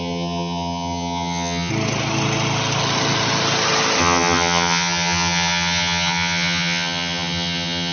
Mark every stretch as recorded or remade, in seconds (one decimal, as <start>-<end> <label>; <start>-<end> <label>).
0.0-1.7 remade; 1.7-4.0 recorded; 4.0-7.9 remade